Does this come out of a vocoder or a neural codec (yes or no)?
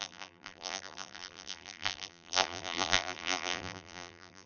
yes